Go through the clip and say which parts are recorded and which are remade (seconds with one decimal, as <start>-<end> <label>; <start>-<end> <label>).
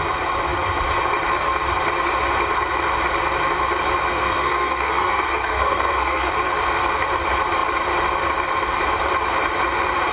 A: 0.0-4.1 recorded; 4.1-6.3 remade; 6.3-10.1 recorded